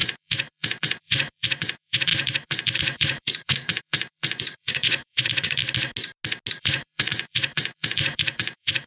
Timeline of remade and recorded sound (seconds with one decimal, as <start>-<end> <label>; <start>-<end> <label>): 0.0-5.6 remade; 5.6-6.5 recorded; 6.5-8.9 remade